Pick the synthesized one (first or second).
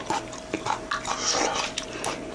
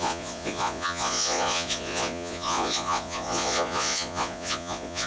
second